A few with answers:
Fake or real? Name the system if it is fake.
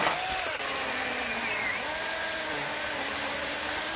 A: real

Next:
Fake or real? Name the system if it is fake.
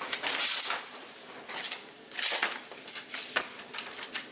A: real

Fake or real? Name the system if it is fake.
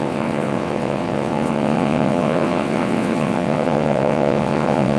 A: fake, vocoder, WaveNeXt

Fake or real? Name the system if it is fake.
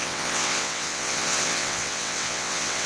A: fake, vocoder, WaveNeXt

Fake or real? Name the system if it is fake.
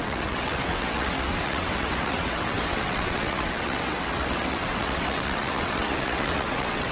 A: fake, vocoder, WaveNeXt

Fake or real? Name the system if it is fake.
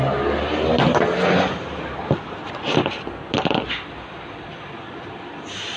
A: real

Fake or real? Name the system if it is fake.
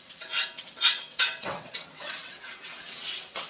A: fake, vocoder, WaveNeXt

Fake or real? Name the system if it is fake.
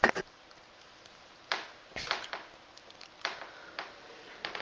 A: real